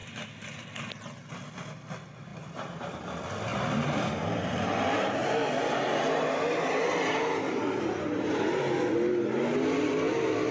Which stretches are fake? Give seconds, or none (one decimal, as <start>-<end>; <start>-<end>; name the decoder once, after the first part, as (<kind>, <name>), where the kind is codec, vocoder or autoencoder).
2.3-3.1 (vocoder, BigVGAN v2)